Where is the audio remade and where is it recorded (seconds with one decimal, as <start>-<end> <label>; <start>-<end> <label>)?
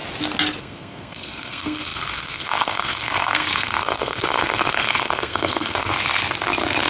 0.0-0.6 recorded; 0.6-5.9 remade; 5.9-6.9 recorded